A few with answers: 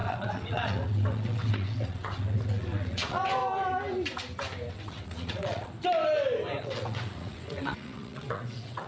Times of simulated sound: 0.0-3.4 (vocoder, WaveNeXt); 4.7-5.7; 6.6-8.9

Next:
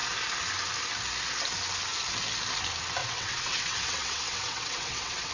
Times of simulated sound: 3.0-5.3 (vocoder, WaveNeXt)

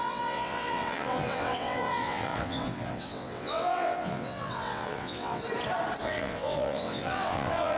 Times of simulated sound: 0.0-5.4 (vocoder, WaveNeXt); 6.0-7.8

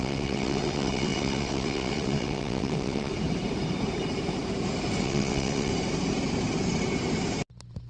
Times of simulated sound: 0.0-3.1 (vocoder, WaveNeXt); 5.0-5.7